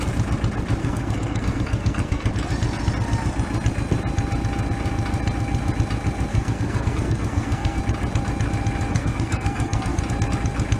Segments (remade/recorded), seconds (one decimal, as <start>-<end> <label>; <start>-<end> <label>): 0.0-0.8 recorded; 0.8-2.3 remade; 2.3-6.3 recorded; 6.3-7.8 remade; 7.8-8.9 recorded; 8.9-10.0 remade; 10.0-10.8 recorded